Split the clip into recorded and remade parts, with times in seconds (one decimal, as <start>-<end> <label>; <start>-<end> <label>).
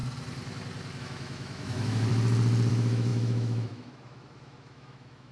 0.0-1.0 recorded; 1.0-2.1 remade; 2.1-2.7 recorded; 2.7-5.3 remade